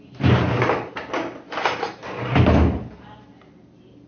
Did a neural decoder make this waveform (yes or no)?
no